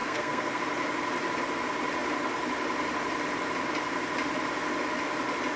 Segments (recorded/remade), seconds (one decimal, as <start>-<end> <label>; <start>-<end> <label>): 0.0-0.6 remade; 0.6-5.6 recorded

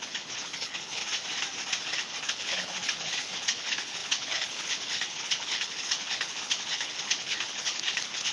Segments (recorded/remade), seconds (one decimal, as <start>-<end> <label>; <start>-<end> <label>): 0.0-1.0 remade; 1.0-1.8 recorded; 1.8-8.3 remade

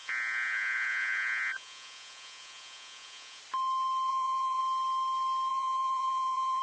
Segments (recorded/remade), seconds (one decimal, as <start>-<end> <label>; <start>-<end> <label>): 0.0-3.4 remade; 3.4-4.1 recorded; 4.1-4.6 remade; 4.6-5.5 recorded; 5.5-6.6 remade

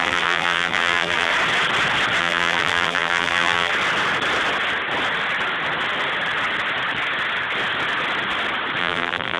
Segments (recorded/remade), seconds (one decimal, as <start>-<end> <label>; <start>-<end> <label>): 0.0-1.3 remade; 1.3-2.2 recorded; 2.2-3.7 remade; 3.7-8.8 recorded; 8.8-9.4 remade

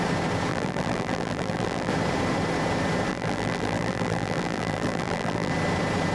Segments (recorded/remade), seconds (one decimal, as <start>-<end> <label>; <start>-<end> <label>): 0.0-0.5 recorded; 0.5-1.9 remade; 1.9-3.1 recorded; 3.1-5.5 remade; 5.5-6.1 recorded

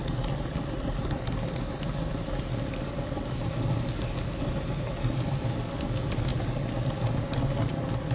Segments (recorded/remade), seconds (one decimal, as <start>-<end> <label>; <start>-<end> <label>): 0.0-8.1 recorded